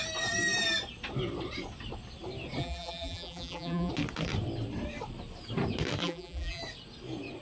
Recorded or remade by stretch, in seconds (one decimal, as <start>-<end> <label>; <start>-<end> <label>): 0.0-2.6 recorded; 2.6-3.9 remade; 3.9-6.0 recorded; 6.0-6.6 remade; 6.6-7.4 recorded